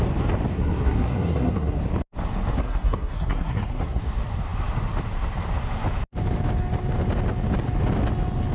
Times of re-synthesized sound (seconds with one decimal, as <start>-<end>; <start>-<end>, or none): 0.5-1.8; 2.6-4.0